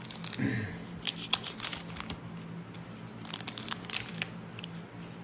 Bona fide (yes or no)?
yes